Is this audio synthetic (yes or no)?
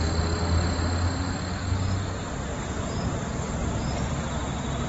no